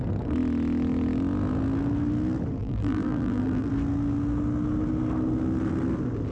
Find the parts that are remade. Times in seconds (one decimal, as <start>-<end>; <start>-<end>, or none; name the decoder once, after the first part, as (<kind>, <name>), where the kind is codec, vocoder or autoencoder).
2.6-3.7 (vocoder, BigVGAN v2)